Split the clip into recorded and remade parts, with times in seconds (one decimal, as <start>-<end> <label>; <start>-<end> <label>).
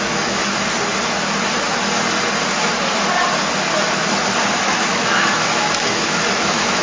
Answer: 0.0-0.4 remade; 0.4-4.5 recorded; 4.5-6.8 remade